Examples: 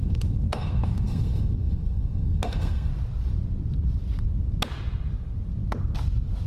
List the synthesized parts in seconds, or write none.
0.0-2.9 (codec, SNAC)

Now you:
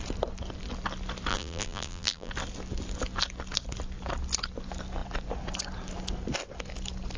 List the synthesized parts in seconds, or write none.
1.3-2.3 (vocoder, BigVGAN v2)

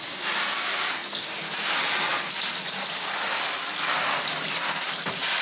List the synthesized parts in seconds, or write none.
0.0-1.0 (vocoder, BigVGAN v2); 1.6-2.1

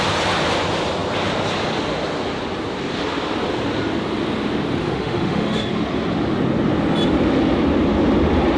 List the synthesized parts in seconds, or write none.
4.8-5.7 (autoencoder, DAC-VAE)

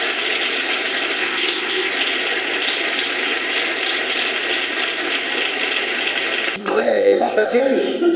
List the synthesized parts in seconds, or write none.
1.2-1.9 (codec, ZipCodec); 6.6-7.6